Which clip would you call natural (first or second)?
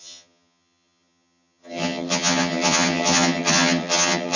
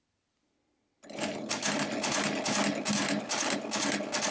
second